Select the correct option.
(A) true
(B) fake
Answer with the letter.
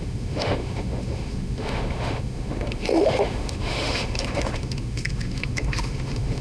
B